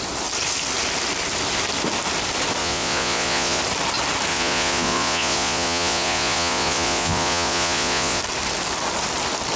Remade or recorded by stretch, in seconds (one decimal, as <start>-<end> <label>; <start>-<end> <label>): 0.0-2.6 recorded; 2.6-3.6 remade; 3.6-4.3 recorded; 4.3-8.2 remade; 8.2-9.6 recorded